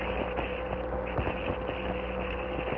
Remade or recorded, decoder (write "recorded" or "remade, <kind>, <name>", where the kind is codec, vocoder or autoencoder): recorded